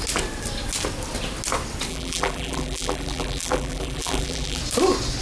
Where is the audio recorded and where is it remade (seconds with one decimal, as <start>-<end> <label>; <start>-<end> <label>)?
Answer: 0.0-1.9 recorded; 1.9-4.6 remade; 4.6-5.2 recorded